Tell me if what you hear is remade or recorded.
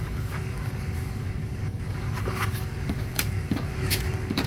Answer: remade